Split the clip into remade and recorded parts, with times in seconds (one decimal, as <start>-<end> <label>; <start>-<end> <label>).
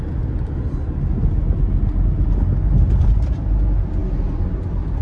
0.0-5.0 recorded